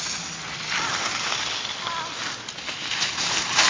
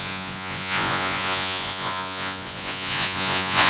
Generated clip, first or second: second